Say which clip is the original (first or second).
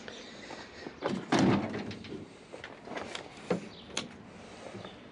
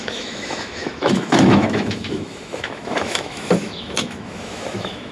first